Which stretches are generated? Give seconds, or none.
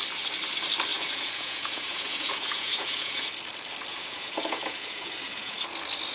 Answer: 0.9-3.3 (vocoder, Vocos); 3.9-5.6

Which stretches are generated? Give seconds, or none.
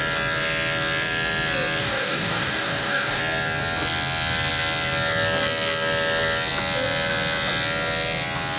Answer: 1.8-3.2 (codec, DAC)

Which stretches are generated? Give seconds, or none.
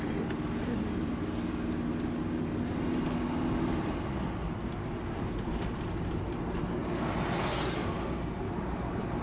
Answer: none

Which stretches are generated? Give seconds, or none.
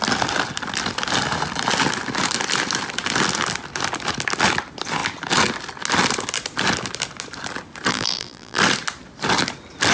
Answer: 7.9-8.6 (vocoder, BigVGAN v2)